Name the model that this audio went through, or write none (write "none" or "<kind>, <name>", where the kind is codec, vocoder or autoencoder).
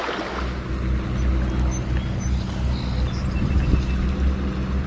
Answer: none